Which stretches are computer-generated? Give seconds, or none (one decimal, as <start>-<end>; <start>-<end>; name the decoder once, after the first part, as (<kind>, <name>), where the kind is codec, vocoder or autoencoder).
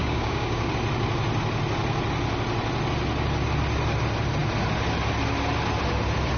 0.0-0.7 (codec, DAC)